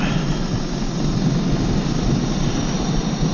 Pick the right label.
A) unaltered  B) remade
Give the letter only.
A